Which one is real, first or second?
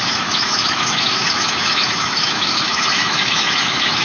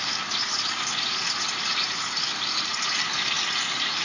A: second